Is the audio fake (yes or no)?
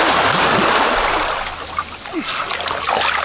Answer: no